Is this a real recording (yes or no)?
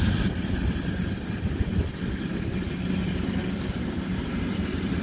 yes